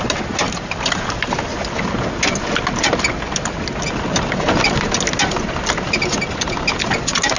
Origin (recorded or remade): recorded